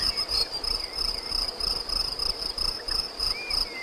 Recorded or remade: remade